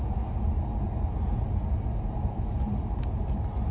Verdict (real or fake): real